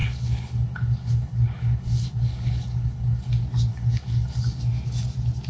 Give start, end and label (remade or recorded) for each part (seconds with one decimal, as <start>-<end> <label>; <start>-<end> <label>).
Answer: 0.0-3.3 remade; 3.3-3.7 recorded; 3.7-4.6 remade; 4.6-5.5 recorded